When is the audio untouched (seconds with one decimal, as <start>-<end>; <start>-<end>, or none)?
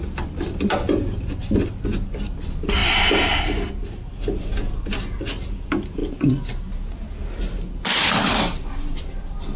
0.0-9.6